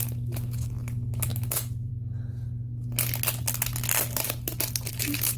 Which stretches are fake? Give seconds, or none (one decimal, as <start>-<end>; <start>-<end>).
0.0-1.9; 4.9-5.4